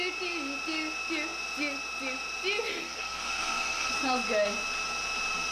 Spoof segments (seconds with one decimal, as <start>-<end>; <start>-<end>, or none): 2.7-3.9